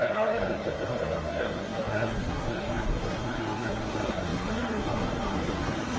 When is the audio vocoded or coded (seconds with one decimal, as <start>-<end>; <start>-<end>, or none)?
0.0-6.0